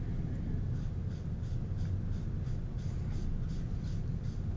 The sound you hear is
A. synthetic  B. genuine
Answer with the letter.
B